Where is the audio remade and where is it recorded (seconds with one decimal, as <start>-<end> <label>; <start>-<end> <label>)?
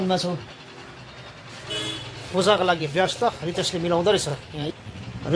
0.0-2.2 recorded; 2.2-3.3 remade; 3.3-4.3 recorded; 4.3-5.0 remade; 5.0-5.4 recorded